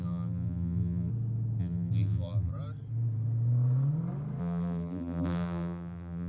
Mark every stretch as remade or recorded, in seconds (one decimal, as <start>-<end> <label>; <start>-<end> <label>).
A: 0.0-1.1 remade; 1.1-1.6 recorded; 1.6-2.5 remade; 2.5-4.4 recorded; 4.4-6.3 remade